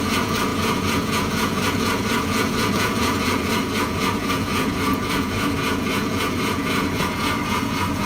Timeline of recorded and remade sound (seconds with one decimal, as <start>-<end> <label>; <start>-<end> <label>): 0.0-8.1 remade